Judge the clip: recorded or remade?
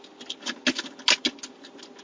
recorded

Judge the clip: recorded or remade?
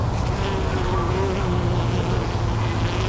recorded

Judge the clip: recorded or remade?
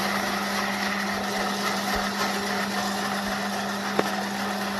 recorded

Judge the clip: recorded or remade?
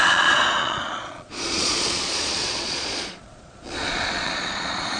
remade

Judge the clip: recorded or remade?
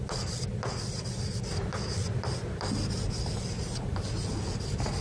recorded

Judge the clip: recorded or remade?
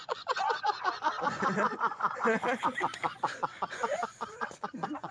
remade